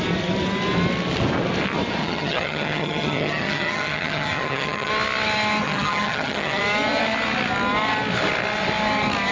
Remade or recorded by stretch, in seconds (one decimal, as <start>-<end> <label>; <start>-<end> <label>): 0.0-2.0 recorded; 2.0-4.9 remade; 4.9-5.6 recorded; 5.6-6.6 remade; 6.6-9.3 recorded